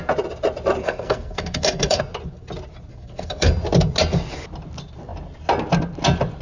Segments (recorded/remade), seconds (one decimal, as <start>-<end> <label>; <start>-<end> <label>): 0.0-0.8 recorded; 0.8-2.0 remade; 2.0-2.9 recorded; 2.9-3.5 remade; 3.5-6.4 recorded